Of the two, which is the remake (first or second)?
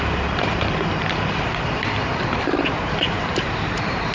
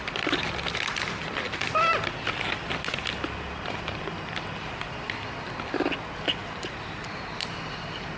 first